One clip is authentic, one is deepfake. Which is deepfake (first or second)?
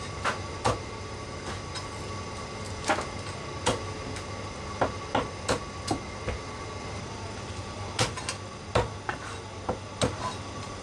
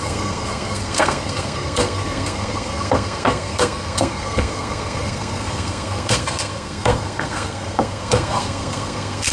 second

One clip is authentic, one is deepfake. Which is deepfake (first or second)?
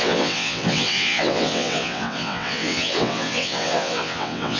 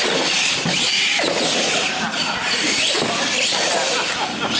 first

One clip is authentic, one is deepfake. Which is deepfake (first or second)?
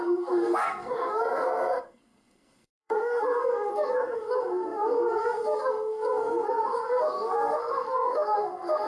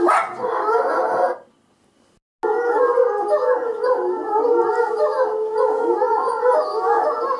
first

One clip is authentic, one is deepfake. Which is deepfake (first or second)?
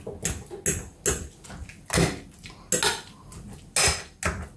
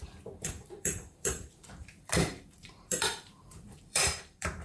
second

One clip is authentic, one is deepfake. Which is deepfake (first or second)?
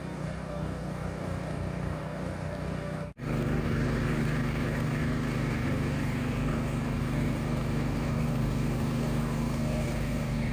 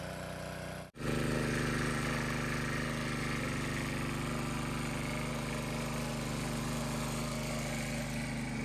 first